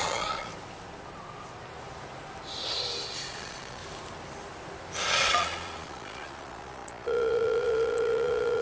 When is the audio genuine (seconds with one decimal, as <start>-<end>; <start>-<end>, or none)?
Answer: 0.5-3.3; 3.8-5.1